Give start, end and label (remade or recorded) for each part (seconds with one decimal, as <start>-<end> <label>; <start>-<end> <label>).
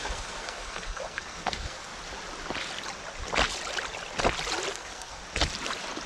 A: 0.0-1.9 remade; 1.9-4.7 recorded; 4.7-5.2 remade; 5.2-6.1 recorded